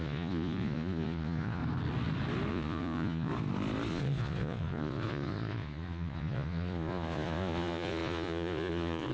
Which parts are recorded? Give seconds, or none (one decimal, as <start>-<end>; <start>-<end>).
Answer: 1.6-2.5; 3.3-3.9